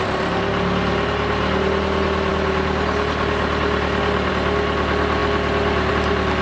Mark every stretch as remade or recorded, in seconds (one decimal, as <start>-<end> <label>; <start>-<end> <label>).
0.0-6.4 recorded